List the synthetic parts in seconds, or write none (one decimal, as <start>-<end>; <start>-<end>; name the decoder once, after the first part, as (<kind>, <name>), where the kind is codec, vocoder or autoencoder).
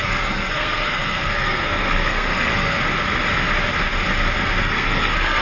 0.0-2.8 (codec, SNAC); 4.6-5.4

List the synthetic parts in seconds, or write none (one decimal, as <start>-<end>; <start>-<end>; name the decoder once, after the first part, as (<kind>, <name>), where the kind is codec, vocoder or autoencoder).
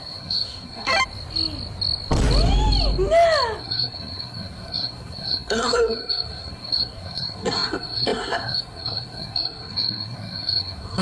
0.0-0.9 (codec, SNAC); 3.6-11.0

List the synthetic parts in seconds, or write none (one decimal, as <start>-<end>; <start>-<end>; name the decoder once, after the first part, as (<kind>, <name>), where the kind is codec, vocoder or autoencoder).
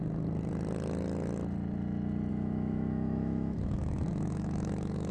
2.3-5.1 (autoencoder, DAC-VAE)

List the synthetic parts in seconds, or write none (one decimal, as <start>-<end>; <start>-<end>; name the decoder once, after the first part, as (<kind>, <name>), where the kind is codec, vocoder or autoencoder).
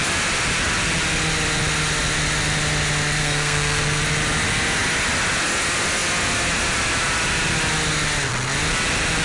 3.2-4.0 (codec, SNAC)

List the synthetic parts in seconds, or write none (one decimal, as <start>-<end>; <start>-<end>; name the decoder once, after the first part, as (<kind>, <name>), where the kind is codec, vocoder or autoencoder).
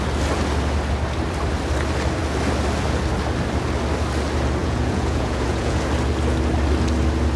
4.6-5.8 (vocoder, Vocos)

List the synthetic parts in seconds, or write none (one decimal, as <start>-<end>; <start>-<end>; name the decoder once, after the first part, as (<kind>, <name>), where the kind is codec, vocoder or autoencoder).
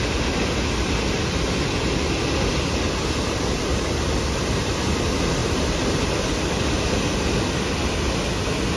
5.4-6.1 (vocoder, BigVGAN v2)